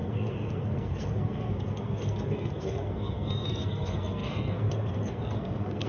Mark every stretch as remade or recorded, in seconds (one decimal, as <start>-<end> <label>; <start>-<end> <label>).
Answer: 0.0-5.9 remade